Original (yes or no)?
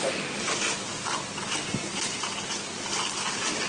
yes